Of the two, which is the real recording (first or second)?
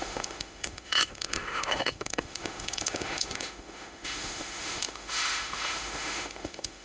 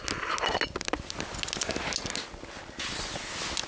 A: second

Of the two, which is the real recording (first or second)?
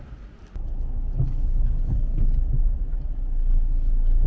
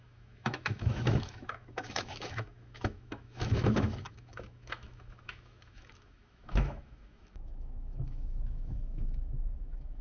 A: first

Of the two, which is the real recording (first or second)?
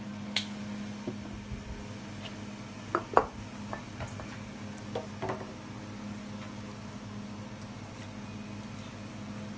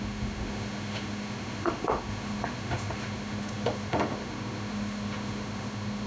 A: first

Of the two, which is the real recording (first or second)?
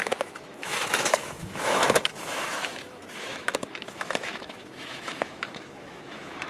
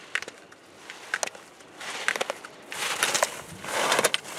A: second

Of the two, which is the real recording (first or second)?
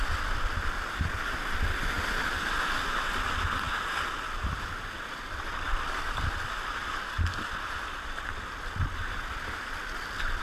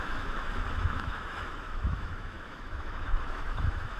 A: first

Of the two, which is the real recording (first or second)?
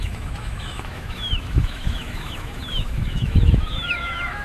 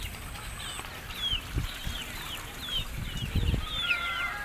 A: second